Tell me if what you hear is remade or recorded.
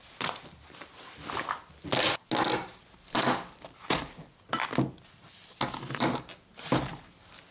recorded